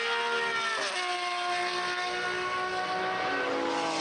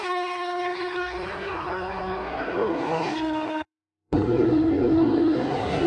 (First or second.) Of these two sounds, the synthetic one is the second